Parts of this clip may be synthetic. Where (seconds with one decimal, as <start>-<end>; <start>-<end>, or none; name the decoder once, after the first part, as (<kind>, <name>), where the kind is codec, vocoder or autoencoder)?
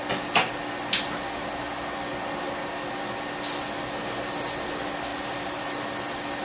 none